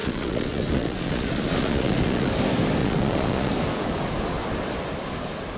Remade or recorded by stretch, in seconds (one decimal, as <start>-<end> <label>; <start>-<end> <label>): 0.0-2.3 remade; 2.3-2.8 recorded; 2.8-3.5 remade; 3.5-5.6 recorded